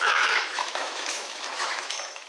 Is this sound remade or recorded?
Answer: remade